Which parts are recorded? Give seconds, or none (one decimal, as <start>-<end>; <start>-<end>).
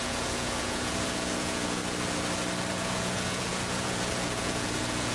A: 1.8-2.7